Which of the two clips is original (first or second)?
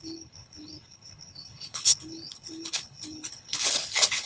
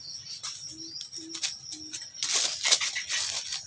second